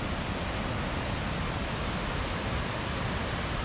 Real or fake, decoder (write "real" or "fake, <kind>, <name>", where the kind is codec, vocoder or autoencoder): real